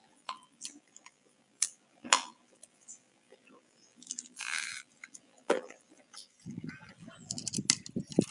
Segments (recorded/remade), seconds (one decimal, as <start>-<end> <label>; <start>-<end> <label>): 0.0-7.4 remade; 7.4-8.3 recorded